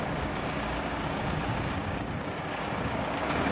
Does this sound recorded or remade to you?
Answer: remade